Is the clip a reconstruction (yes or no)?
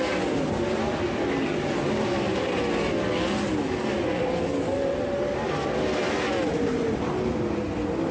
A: no